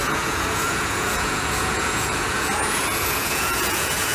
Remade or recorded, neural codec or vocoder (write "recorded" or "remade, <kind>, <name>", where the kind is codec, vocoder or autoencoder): remade, vocoder, Vocos